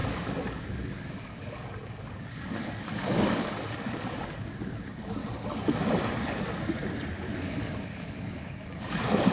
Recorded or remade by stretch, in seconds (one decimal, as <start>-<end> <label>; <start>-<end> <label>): 0.0-5.2 remade; 5.2-7.1 recorded; 7.1-9.3 remade